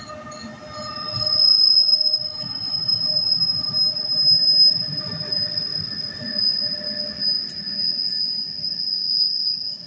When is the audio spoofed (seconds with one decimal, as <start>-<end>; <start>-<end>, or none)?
none